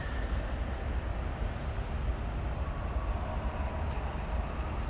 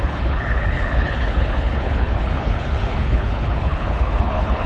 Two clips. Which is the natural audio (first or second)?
first